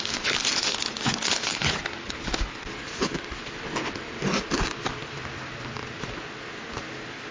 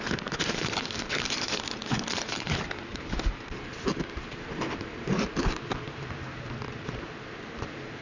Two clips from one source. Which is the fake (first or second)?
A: second